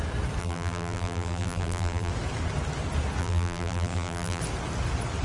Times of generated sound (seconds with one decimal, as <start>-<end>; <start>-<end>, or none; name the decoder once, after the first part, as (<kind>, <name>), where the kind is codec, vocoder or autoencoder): 0.4-2.1 (vocoder, BigVGAN v2); 3.2-4.4